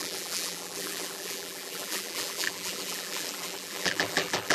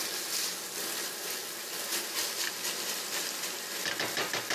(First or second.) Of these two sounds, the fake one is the first